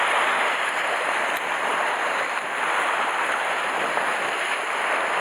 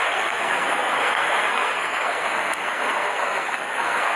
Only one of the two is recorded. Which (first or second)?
first